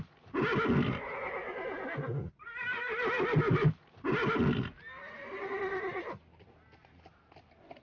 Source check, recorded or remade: recorded